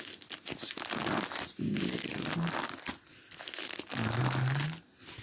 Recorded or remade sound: recorded